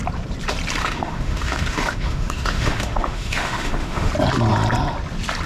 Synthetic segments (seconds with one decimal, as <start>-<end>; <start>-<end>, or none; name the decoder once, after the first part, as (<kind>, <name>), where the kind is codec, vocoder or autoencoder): 0.8-4.1 (autoencoder, DAC-VAE)

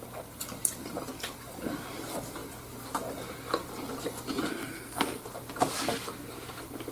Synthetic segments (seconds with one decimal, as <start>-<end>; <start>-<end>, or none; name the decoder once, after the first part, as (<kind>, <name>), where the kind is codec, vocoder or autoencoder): 4.5-5.2 (codec, SNAC)

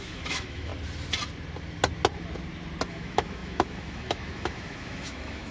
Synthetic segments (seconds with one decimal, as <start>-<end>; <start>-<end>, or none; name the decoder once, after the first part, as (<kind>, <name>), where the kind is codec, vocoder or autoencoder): 0.0-0.7 (autoencoder, DAC-VAE); 2.9-5.5